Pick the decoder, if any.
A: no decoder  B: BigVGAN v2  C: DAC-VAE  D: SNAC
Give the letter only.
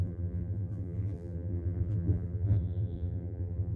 B